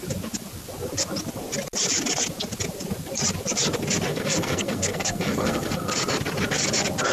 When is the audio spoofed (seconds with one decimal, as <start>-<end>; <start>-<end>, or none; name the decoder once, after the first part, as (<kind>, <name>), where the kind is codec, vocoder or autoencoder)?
4.1-5.9 (codec, SNAC)

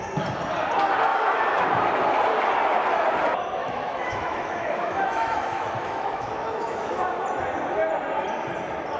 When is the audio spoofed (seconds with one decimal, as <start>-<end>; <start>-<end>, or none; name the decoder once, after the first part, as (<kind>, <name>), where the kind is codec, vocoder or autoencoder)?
1.1-1.6 (autoencoder, DAC-VAE); 3.6-7.0

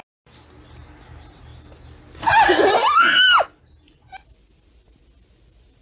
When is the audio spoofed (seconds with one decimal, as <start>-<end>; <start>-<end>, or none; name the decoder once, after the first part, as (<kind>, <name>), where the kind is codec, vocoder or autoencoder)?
none

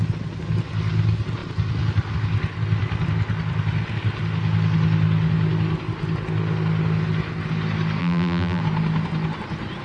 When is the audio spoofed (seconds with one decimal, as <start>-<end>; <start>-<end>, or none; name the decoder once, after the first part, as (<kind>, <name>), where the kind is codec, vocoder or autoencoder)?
8.0-8.6 (vocoder, BigVGAN v2)

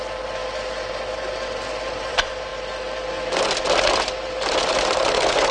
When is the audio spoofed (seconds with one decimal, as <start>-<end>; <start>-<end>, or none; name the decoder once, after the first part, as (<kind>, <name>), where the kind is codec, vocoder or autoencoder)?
0.0-0.4 (vocoder, BigVGAN v2); 2.1-5.5